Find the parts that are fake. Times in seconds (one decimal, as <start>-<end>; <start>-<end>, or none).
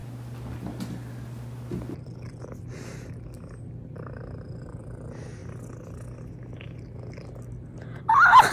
none